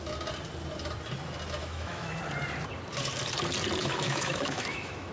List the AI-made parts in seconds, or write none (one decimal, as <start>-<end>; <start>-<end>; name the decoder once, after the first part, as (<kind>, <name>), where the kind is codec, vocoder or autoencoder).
1.6-2.2 (autoencoder, DAC-VAE); 3.8-5.1